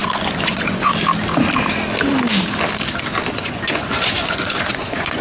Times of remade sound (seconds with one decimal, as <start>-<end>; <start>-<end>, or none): 0.0-1.0; 3.4-5.2